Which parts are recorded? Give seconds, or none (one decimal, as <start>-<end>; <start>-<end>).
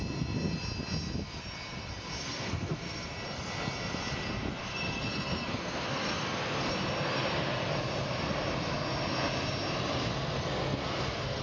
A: 0.0-2.2; 3.1-4.6; 6.7-10.1